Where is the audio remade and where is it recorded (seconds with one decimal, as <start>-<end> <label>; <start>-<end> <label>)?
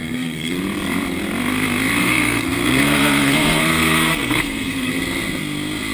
0.0-0.6 remade; 0.6-2.0 recorded; 2.0-4.9 remade; 4.9-5.9 recorded